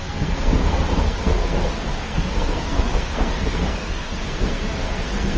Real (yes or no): no